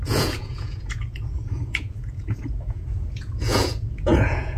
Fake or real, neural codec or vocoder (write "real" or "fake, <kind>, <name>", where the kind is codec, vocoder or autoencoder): fake, vocoder, Vocos